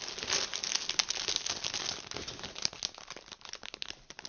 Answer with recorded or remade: recorded